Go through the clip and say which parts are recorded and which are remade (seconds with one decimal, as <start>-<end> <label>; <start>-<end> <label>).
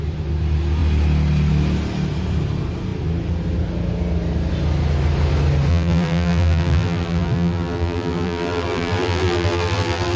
0.0-5.7 recorded; 5.7-10.2 remade